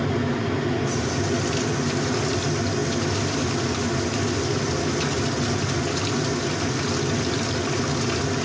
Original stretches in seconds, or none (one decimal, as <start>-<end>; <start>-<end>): 0.0-8.4